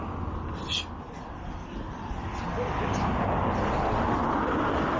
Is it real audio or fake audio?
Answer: real